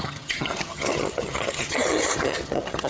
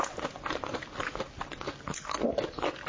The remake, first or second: first